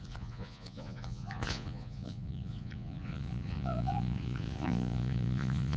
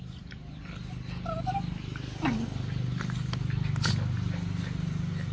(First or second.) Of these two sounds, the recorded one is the second